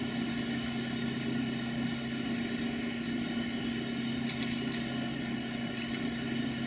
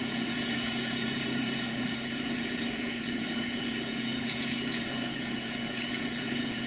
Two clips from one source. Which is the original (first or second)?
first